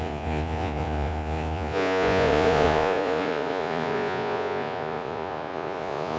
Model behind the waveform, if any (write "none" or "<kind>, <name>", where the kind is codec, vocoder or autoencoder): vocoder, Vocos